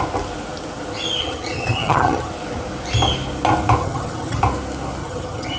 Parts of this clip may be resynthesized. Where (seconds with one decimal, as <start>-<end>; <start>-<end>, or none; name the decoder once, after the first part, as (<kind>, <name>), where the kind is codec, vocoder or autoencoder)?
1.2-2.3 (vocoder, HiFi-GAN); 3.8-4.4; 5.0-5.6